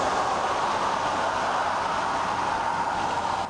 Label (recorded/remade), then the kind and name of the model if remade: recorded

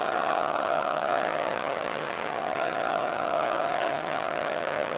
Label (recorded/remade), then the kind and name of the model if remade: remade, vocoder, HiFi-GAN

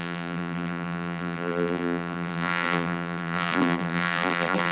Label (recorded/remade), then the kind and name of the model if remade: remade, vocoder, BigVGAN v2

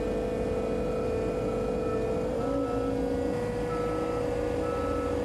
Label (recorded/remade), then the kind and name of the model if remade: recorded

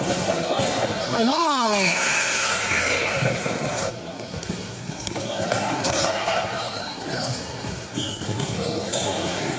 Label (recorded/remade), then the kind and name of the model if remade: remade, codec, SNAC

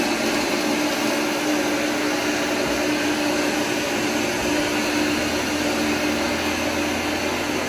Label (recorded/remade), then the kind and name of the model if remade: recorded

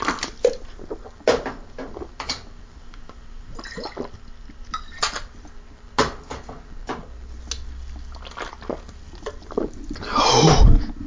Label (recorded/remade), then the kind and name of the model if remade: recorded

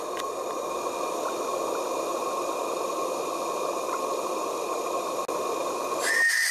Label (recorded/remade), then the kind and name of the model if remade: recorded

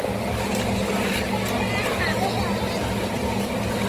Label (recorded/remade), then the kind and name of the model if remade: recorded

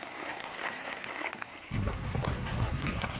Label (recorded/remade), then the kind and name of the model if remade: remade, codec, SNAC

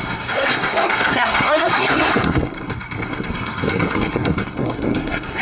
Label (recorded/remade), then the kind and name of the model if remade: remade, codec, SNAC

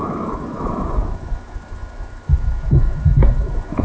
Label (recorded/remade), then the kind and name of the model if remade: remade, autoencoder, DAC-VAE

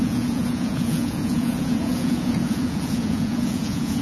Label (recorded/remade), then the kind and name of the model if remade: remade, vocoder, Vocos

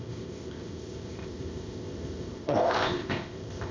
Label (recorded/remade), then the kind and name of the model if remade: remade, codec, ZipCodec